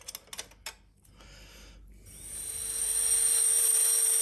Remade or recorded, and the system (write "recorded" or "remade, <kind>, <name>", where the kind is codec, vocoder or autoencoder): recorded